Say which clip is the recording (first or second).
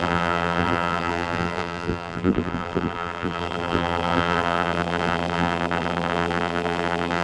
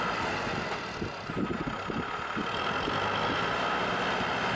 second